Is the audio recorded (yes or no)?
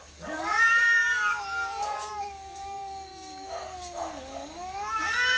no